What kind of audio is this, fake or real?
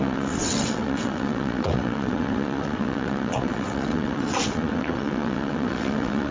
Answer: fake